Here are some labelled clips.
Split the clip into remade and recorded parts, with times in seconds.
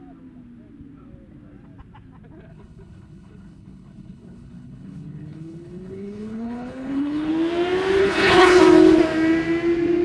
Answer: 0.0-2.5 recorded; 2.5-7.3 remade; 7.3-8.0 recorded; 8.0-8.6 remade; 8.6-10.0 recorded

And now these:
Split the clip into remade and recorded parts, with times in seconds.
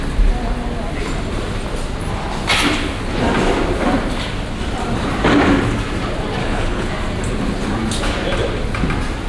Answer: 0.0-6.4 recorded; 6.4-6.9 remade; 6.9-9.3 recorded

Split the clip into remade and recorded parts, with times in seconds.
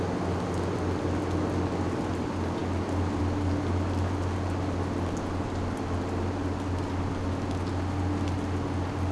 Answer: 0.0-9.1 recorded